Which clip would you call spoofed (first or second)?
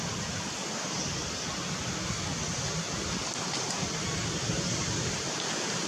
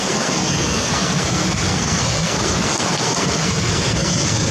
second